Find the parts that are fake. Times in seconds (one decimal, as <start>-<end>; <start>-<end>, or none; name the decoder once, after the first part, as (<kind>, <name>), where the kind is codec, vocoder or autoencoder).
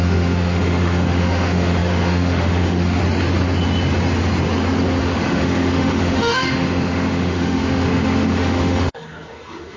0.0-3.0 (autoencoder, DAC-VAE); 5.0-9.8